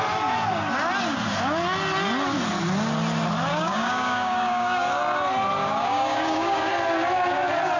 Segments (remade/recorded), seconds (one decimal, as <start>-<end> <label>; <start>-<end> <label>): 0.0-3.5 recorded; 3.5-5.0 remade; 5.0-5.6 recorded; 5.6-6.7 remade; 6.7-7.8 recorded

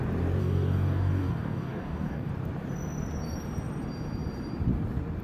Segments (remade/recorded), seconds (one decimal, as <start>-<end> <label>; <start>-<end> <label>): 0.0-0.4 recorded; 0.4-2.3 remade; 2.3-5.2 recorded

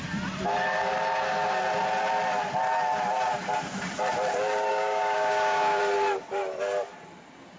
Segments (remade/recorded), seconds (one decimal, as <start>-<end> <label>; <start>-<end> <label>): 0.0-4.7 recorded; 4.7-5.8 remade; 5.8-7.6 recorded